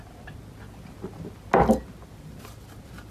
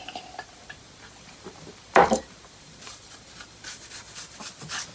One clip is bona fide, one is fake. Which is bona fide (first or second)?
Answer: first